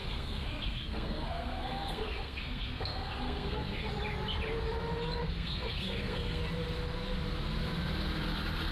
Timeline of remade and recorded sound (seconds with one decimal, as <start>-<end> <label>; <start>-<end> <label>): 0.0-3.8 remade; 3.8-5.2 recorded; 5.2-6.4 remade; 6.4-8.7 recorded